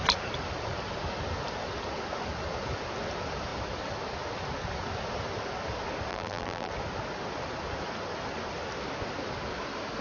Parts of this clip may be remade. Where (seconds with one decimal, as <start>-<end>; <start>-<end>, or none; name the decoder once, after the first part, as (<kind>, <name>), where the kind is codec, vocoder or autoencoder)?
6.1-6.7 (vocoder, BigVGAN v2)